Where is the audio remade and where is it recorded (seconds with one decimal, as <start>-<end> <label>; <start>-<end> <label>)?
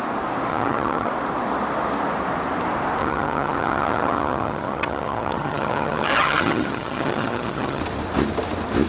0.0-0.5 recorded; 0.5-1.1 remade; 1.1-3.0 recorded; 3.0-7.8 remade; 7.8-8.9 recorded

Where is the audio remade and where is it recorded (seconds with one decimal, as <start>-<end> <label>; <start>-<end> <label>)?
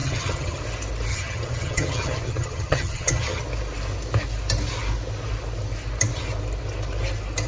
0.0-0.6 remade; 0.6-1.1 recorded; 1.1-3.4 remade; 3.4-7.5 recorded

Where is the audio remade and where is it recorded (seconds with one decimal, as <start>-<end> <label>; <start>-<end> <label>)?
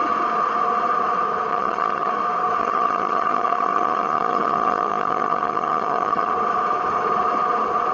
0.0-1.5 recorded; 1.5-2.1 remade; 2.1-2.6 recorded; 2.6-6.3 remade; 6.3-7.9 recorded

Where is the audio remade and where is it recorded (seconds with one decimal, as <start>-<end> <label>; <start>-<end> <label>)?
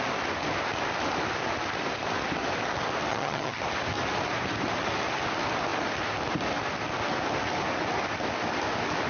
0.0-3.1 recorded; 3.1-3.6 remade; 3.6-9.1 recorded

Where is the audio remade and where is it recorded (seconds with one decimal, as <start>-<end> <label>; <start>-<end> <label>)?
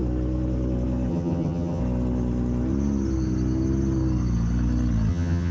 0.0-1.1 recorded; 1.1-1.8 remade; 1.8-5.1 recorded; 5.1-5.5 remade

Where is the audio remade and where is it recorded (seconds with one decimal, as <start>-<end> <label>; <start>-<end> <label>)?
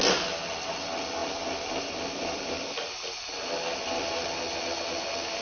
0.0-5.4 recorded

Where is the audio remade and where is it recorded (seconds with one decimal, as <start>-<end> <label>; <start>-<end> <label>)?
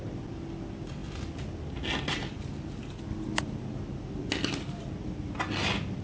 0.0-6.0 recorded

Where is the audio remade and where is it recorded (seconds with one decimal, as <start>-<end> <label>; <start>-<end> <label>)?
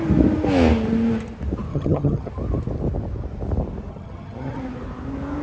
0.0-1.7 recorded; 1.7-2.3 remade; 2.3-3.9 recorded; 3.9-4.6 remade; 4.6-5.4 recorded